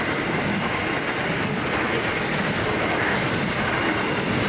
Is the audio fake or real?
real